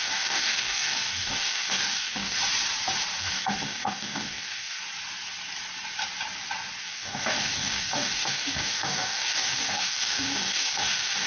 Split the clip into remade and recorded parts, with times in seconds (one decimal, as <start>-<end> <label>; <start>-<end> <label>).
0.0-2.4 remade; 2.4-3.2 recorded; 3.2-4.8 remade; 4.8-6.8 recorded; 6.8-11.3 remade